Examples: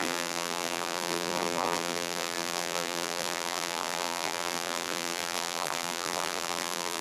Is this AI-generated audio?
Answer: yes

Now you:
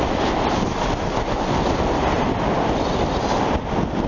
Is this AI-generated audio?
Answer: no